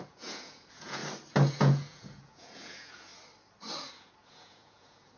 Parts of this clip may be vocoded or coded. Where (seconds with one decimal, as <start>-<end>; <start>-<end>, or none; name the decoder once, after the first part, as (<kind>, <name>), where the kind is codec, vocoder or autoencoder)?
0.0-1.0 (vocoder, Vocos); 1.5-3.1; 3.9-5.2